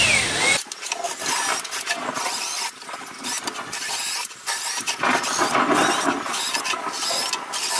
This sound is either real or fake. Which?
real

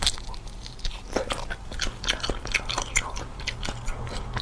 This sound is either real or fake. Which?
real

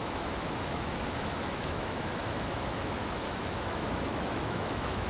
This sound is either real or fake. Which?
fake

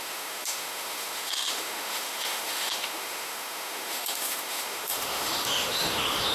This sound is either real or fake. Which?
fake